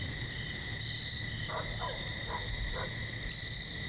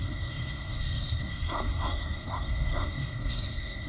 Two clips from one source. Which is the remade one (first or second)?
second